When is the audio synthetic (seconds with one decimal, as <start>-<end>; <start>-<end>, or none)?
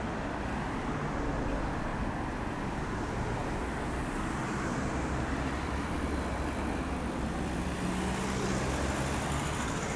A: none